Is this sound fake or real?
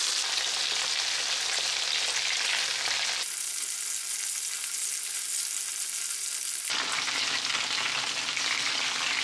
real